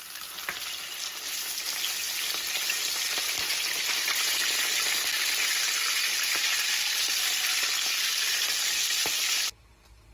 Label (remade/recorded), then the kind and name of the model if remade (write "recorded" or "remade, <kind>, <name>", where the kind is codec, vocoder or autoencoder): recorded